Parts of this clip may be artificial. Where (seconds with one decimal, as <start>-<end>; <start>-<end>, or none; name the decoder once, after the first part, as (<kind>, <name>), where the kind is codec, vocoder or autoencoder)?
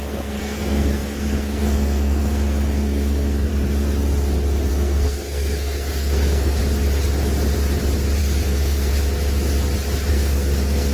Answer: 0.0-3.5 (codec, SNAC); 4.7-6.6; 8.2-8.9; 10.1-10.9